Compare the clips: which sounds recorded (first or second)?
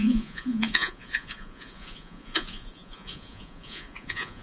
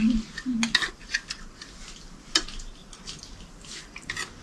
second